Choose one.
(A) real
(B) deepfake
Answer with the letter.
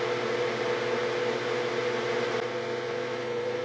A